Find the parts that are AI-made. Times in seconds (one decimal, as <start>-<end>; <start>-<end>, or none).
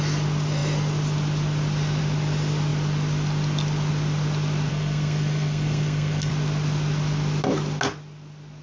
4.7-6.3